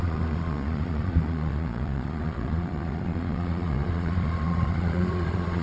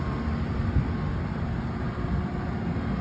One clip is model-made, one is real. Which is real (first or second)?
second